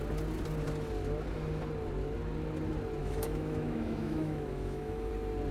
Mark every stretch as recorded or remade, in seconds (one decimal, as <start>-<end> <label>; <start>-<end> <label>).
0.0-3.0 recorded; 3.0-5.1 remade; 5.1-5.5 recorded